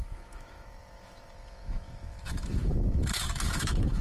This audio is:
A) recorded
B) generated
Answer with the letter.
B